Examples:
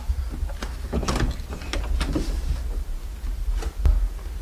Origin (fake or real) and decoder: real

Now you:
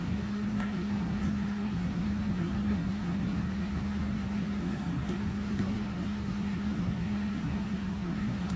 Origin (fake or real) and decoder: fake, codec, SNAC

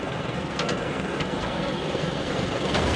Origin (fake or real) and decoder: fake, codec, SNAC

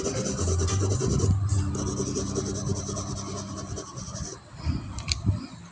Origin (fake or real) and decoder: real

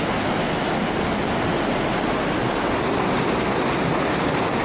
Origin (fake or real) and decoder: real